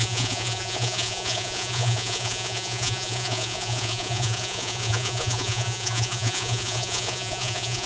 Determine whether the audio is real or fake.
fake